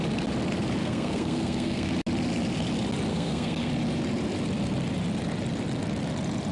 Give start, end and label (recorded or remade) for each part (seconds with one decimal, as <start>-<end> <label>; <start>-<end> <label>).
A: 0.0-0.8 recorded; 0.8-1.9 remade; 1.9-3.1 recorded; 3.1-3.7 remade; 3.7-6.5 recorded